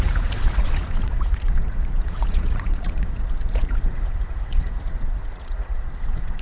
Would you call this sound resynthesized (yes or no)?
yes